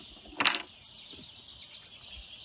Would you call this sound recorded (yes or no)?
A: yes